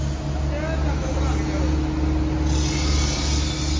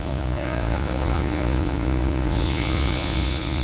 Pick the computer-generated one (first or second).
second